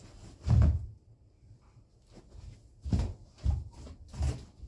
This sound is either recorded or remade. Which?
recorded